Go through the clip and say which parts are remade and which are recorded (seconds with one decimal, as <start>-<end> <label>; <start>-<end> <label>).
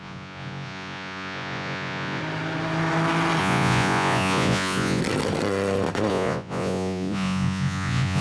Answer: 0.0-2.2 remade; 2.2-3.4 recorded; 3.4-5.0 remade; 5.0-6.1 recorded; 6.1-8.2 remade